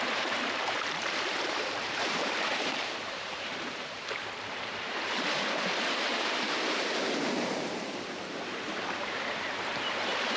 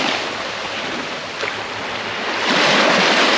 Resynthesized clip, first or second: first